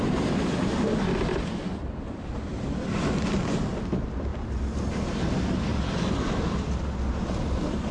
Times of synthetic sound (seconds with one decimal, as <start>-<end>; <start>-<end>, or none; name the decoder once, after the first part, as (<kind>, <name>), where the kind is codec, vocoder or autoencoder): none